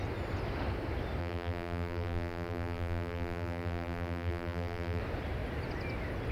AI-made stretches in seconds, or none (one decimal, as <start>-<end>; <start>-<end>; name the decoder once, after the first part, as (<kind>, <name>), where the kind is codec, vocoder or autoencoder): 1.2-5.0 (vocoder, BigVGAN v2)